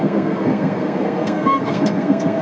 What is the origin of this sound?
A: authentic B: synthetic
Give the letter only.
B